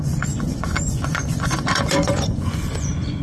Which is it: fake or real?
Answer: fake